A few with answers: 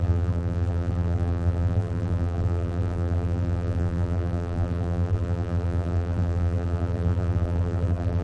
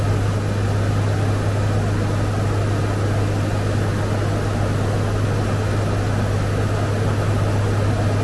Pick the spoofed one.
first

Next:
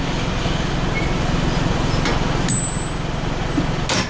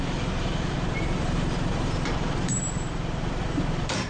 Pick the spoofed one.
second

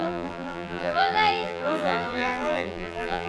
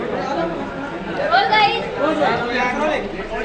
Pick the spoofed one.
first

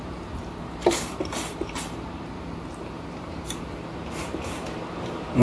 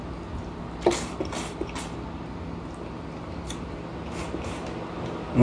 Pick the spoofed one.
first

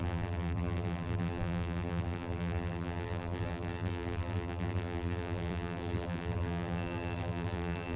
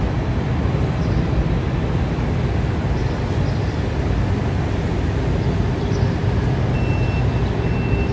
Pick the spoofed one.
first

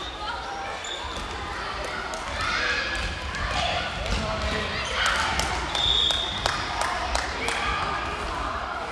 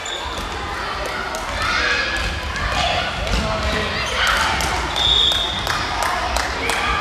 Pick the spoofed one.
first